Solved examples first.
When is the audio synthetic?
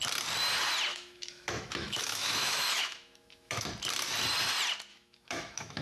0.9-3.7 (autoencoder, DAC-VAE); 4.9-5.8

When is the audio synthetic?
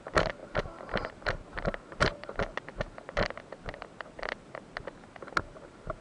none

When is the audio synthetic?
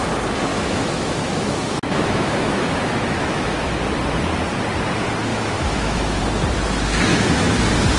0.5-3.7 (autoencoder, DAC-VAE); 5.3-6.2; 7.1-7.6